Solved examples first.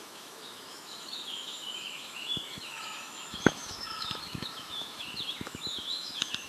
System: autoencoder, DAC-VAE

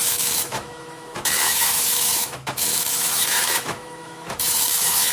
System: autoencoder, DAC-VAE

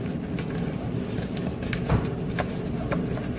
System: none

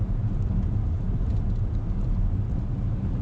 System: none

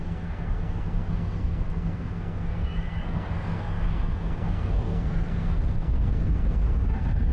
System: codec, SNAC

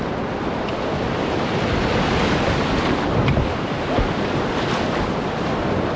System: none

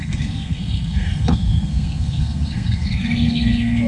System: codec, SNAC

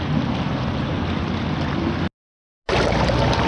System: none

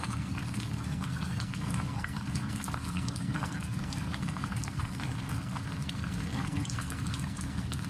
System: codec, SNAC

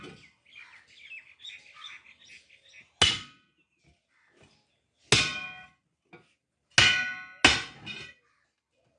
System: none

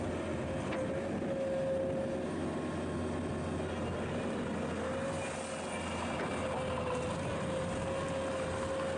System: none